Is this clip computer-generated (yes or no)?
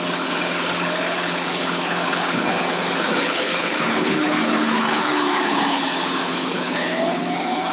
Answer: yes